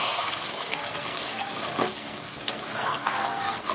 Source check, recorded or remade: remade